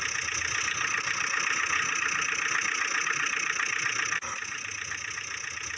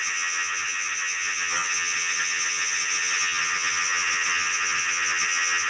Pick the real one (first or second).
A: first